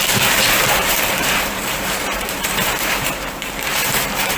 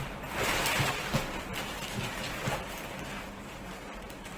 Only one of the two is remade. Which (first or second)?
first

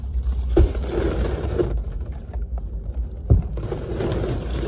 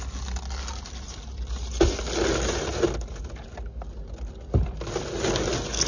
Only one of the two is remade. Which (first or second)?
first